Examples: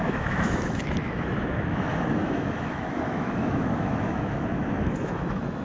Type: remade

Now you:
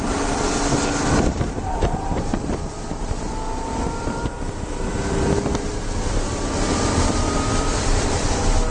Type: remade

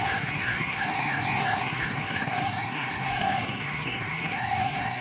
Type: remade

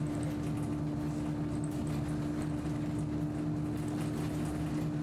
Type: recorded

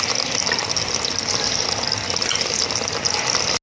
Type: recorded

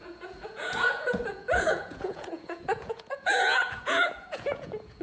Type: remade